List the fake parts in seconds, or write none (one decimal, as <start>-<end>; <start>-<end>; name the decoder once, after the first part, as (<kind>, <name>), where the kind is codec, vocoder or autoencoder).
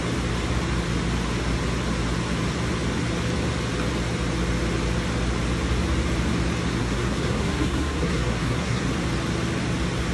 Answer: 6.8-8.8 (codec, SNAC)